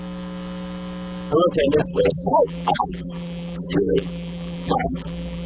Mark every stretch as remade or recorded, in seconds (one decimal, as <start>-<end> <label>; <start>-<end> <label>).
0.0-1.9 recorded; 1.9-5.5 remade